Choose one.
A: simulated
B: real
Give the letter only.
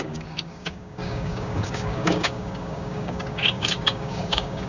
A